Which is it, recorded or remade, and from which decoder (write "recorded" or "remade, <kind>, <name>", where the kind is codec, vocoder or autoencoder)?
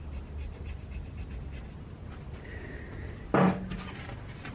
recorded